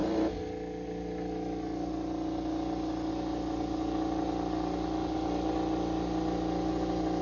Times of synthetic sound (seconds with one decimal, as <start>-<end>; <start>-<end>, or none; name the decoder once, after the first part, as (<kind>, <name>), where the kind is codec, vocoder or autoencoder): none